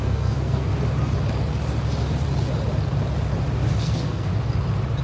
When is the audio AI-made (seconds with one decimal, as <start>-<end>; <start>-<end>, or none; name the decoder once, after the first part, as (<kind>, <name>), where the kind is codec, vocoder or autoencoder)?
0.0-0.7 (codec, SNAC); 3.7-4.3